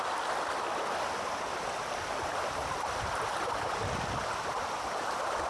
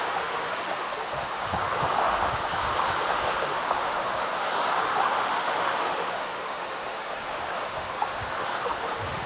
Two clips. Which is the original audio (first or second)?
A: first